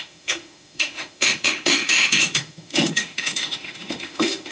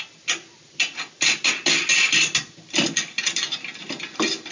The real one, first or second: second